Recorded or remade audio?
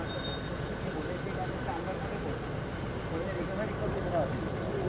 recorded